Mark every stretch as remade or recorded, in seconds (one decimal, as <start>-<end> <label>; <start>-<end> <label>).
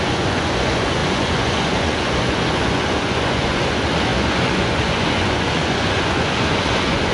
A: 0.0-7.1 remade